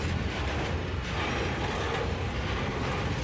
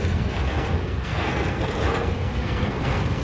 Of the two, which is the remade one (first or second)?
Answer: second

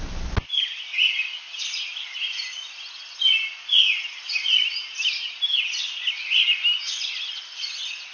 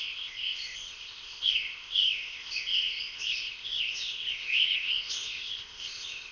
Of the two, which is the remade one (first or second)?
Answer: second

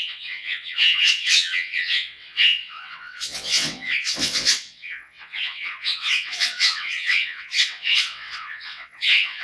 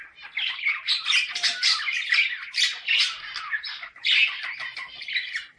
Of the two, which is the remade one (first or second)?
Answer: first